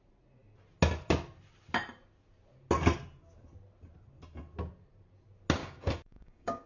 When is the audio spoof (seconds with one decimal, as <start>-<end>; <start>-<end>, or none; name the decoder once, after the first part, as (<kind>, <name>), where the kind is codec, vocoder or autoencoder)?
5.6-6.7 (codec, DAC)